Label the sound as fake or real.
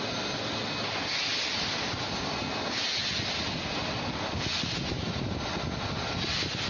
real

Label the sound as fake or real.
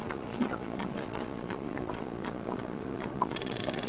fake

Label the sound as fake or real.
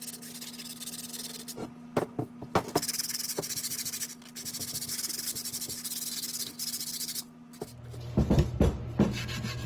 real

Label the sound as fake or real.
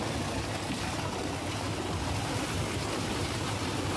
real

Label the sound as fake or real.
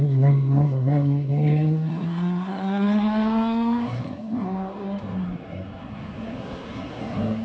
fake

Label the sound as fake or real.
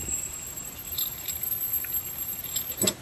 real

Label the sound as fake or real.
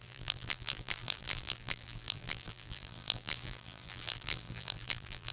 fake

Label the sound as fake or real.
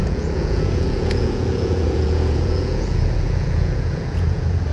fake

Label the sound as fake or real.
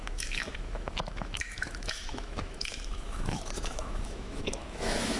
fake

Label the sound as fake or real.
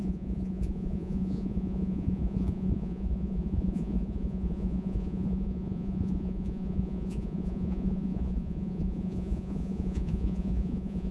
fake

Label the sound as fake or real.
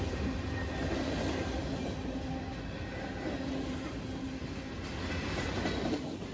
real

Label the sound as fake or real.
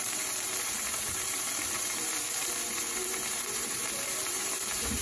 fake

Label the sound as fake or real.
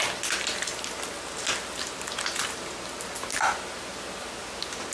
real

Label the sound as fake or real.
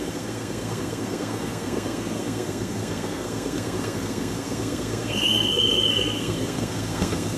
fake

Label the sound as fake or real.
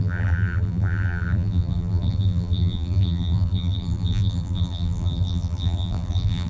fake